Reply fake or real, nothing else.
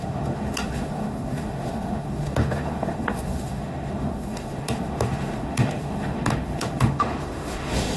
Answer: fake